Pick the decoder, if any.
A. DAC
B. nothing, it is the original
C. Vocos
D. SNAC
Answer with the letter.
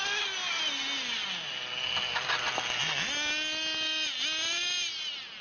B